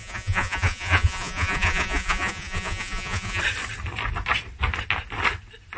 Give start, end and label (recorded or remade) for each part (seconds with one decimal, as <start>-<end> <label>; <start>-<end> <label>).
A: 0.0-3.4 remade; 3.4-5.8 recorded